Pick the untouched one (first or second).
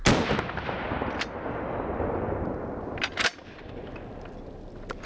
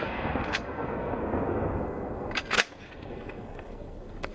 first